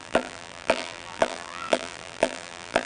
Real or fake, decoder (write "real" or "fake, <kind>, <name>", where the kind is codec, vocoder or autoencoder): fake, vocoder, BigVGAN v2